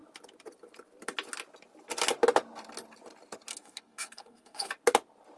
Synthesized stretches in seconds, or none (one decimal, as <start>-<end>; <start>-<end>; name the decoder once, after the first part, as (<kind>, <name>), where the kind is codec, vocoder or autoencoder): 3.5-4.7 (codec, SNAC)